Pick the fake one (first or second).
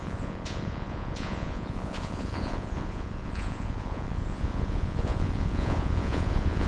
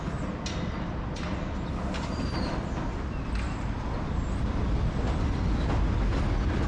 first